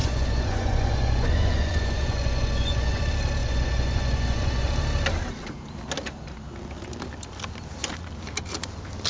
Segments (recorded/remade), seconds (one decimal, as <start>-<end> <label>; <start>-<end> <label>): 0.0-3.0 remade; 3.0-3.4 recorded; 3.4-4.7 remade; 4.7-9.1 recorded